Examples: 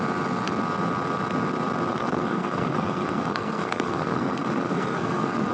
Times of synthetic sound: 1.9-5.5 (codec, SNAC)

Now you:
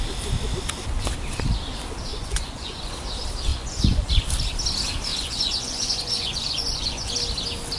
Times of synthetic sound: 2.1-2.9 (vocoder, Vocos); 3.5-4.1; 5.1-7.1

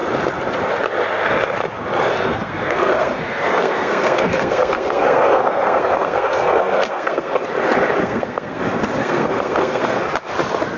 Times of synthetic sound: 2.3-7.4 (codec, SNAC); 8.0-8.6; 9.0-10.0